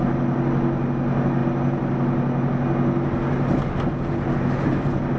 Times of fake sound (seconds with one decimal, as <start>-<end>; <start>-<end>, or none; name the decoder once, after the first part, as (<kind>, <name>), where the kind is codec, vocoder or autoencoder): none